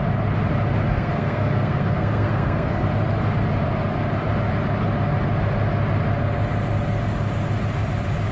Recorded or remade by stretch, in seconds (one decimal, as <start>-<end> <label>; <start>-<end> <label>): 0.0-0.9 recorded; 0.9-2.9 remade; 2.9-8.3 recorded